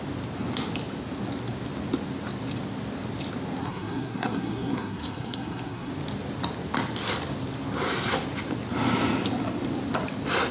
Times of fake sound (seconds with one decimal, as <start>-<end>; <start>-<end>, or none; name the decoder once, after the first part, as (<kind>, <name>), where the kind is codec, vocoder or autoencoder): 3.6-5.9 (codec, SNAC)